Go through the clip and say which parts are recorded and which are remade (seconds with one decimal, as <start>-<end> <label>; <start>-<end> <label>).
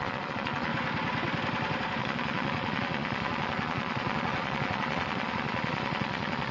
0.0-0.7 remade; 0.7-2.0 recorded; 2.0-6.5 remade